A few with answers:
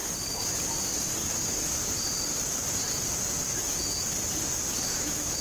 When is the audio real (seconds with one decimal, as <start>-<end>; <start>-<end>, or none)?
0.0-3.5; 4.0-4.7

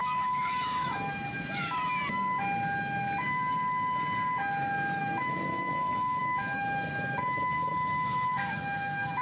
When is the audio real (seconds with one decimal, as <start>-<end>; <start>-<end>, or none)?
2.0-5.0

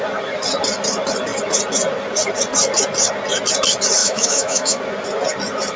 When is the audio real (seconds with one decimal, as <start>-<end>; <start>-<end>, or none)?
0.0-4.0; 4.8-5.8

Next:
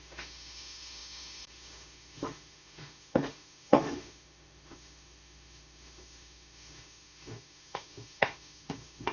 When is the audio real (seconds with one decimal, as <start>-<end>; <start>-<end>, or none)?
none